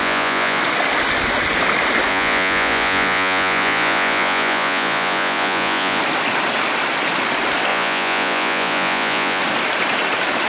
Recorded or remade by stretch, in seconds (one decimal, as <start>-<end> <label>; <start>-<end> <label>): 0.0-0.6 remade; 0.6-2.1 recorded; 2.1-6.0 remade; 6.0-7.7 recorded; 7.7-9.4 remade; 9.4-10.5 recorded